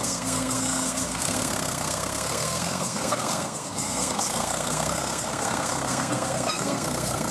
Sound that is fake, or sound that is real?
fake